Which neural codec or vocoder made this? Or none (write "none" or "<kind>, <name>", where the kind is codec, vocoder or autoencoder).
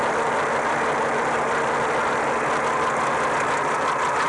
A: none